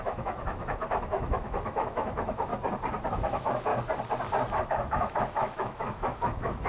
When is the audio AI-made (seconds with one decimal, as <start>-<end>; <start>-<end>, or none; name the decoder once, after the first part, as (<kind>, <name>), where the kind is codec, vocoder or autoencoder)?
0.0-2.5 (autoencoder, DAC-VAE); 3.1-3.7; 4.6-6.7

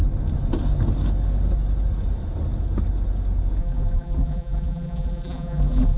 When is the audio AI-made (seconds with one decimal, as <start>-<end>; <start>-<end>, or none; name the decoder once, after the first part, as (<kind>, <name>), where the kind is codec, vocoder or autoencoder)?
3.6-6.0 (vocoder, BigVGAN v2)

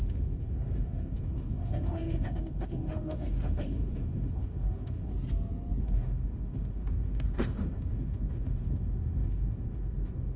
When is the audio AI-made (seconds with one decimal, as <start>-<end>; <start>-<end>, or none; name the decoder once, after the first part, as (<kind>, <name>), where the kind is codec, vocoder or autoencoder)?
0.0-5.1 (autoencoder, DAC-VAE); 5.8-10.4

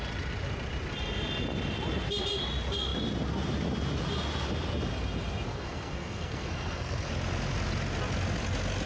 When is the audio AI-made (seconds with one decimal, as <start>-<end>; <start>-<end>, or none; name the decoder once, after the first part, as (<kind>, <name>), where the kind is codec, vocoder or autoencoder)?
5.5-7.1 (codec, SNAC)